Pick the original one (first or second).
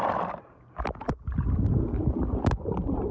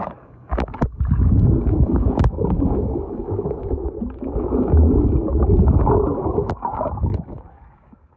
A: first